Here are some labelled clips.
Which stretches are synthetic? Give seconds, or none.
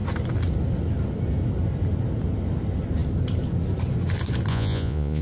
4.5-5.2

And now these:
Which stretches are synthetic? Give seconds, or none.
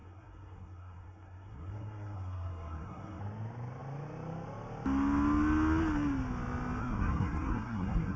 0.0-3.2; 6.8-8.2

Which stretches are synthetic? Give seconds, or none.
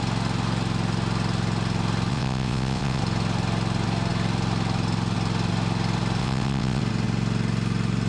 2.1-3.0; 6.2-6.8